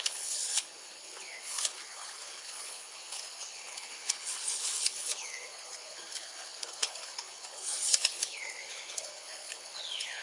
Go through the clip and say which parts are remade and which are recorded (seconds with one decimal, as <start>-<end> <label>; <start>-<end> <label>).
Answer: 0.0-10.2 remade

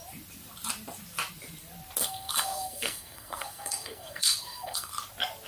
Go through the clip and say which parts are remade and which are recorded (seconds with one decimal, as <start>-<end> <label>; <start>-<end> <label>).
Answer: 0.0-2.0 recorded; 2.0-4.9 remade; 4.9-5.5 recorded